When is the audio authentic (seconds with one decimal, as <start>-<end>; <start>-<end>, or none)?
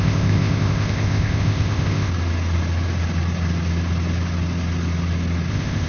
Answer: 2.1-5.5